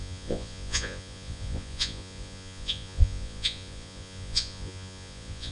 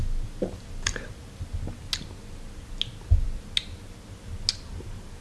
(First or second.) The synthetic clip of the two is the first